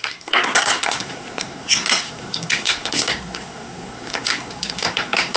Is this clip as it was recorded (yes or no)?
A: no